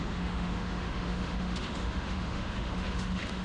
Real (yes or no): no